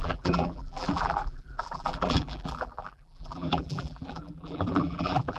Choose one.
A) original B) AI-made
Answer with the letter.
B